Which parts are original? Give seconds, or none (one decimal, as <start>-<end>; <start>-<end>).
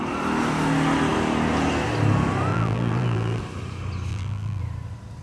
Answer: 0.0-2.5; 3.4-4.1; 4.6-5.2